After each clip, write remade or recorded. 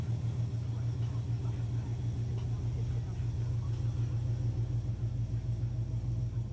recorded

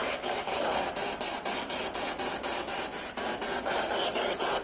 recorded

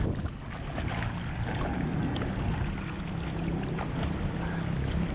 recorded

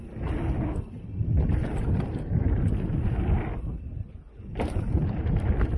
recorded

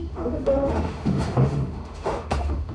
remade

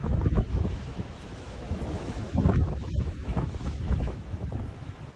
remade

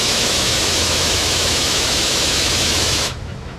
remade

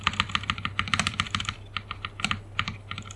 recorded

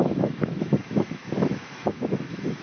remade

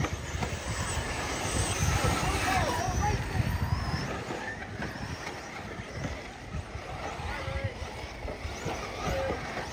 recorded